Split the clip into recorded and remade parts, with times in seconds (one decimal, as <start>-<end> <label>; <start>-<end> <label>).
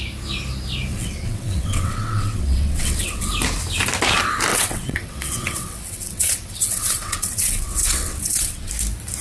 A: 0.0-0.9 recorded; 0.9-3.3 remade; 3.3-4.5 recorded; 4.5-8.7 remade; 8.7-9.2 recorded